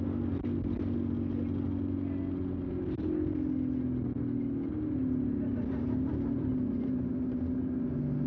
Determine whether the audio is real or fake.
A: real